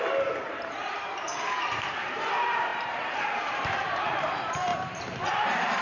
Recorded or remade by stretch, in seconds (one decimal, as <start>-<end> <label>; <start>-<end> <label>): 0.0-4.7 remade; 4.7-5.3 recorded; 5.3-5.8 remade